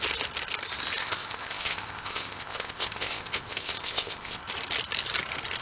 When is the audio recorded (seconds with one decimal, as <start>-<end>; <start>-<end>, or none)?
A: 0.0-1.0; 4.4-5.6